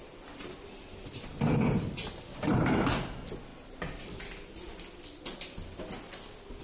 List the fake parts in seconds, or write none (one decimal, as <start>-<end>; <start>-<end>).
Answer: 1.3-2.9